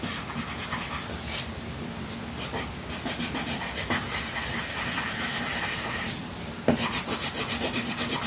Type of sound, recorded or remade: recorded